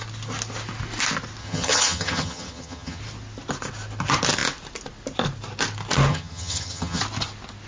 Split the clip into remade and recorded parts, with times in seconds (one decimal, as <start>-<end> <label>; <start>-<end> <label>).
0.0-1.4 recorded; 1.4-3.0 remade; 3.0-6.1 recorded; 6.1-7.0 remade; 7.0-7.7 recorded